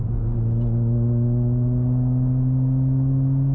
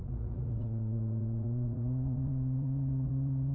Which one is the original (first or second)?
first